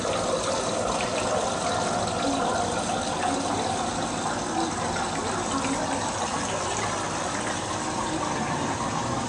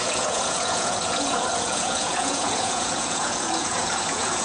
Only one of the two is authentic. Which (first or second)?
first